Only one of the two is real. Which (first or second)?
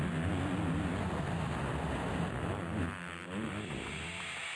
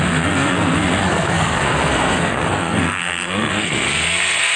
first